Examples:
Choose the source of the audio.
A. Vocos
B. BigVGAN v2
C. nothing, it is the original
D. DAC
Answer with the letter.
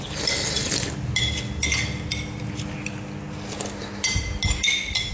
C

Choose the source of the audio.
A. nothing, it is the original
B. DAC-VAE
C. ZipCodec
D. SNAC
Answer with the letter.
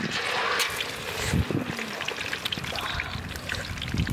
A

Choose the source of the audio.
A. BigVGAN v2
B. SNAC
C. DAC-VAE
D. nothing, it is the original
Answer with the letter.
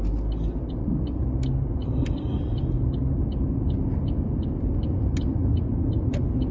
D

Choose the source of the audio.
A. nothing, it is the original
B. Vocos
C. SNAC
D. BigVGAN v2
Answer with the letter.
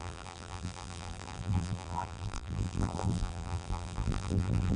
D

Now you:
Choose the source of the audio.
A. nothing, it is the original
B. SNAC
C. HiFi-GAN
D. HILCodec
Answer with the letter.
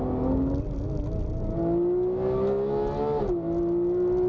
A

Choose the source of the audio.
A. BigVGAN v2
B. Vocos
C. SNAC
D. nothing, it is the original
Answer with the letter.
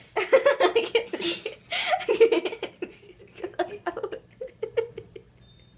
D